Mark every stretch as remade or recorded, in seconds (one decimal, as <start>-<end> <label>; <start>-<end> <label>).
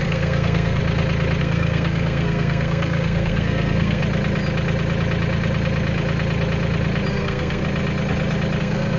0.0-0.8 remade; 0.8-1.4 recorded; 1.4-4.0 remade; 4.0-7.1 recorded; 7.1-7.6 remade; 7.6-8.6 recorded; 8.6-9.0 remade